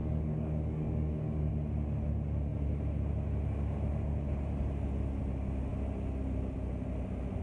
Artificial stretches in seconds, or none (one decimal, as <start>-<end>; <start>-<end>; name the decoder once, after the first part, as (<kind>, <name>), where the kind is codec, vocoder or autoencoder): 0.0-1.5 (codec, DAC)